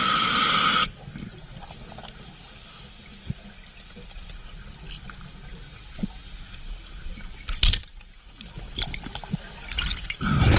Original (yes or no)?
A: yes